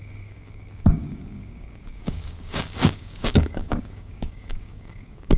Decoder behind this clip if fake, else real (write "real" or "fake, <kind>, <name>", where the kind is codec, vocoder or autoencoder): fake, codec, DAC